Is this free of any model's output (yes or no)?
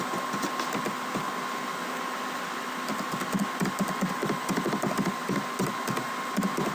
yes